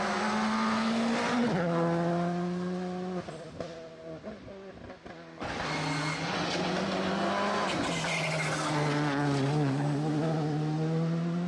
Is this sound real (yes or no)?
yes